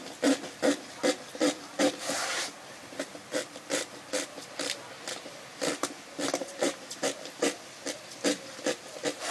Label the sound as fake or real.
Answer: fake